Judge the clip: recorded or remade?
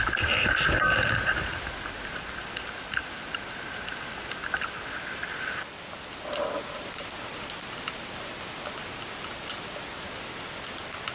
recorded